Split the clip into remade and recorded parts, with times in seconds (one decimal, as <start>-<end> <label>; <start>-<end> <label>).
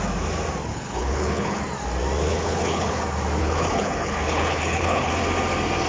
0.0-0.7 recorded; 0.7-1.6 remade; 1.6-2.3 recorded; 2.3-3.0 remade; 3.0-3.4 recorded; 3.4-5.1 remade; 5.1-5.9 recorded